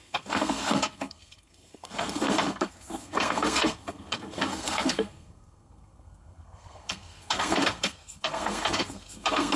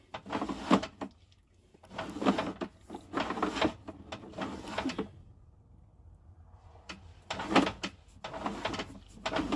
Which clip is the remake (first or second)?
first